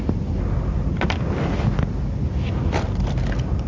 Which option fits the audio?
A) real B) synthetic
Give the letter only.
A